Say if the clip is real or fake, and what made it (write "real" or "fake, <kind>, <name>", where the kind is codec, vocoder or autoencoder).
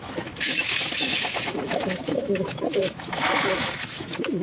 fake, autoencoder, DAC-VAE